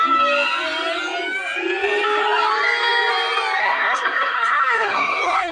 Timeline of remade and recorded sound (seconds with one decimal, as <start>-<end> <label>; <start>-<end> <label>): 0.0-3.6 recorded; 3.6-5.5 remade